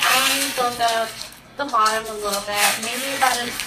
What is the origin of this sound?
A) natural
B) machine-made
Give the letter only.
B